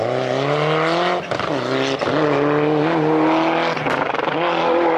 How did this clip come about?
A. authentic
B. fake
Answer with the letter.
A